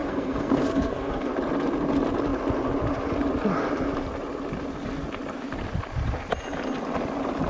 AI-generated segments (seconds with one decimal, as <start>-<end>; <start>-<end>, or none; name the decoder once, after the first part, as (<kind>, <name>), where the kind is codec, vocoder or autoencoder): 0.0-1.3 (codec, SNAC)